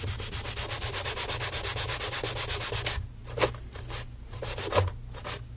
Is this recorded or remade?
recorded